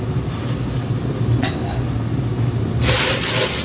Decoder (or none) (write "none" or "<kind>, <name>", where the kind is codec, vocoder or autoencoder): none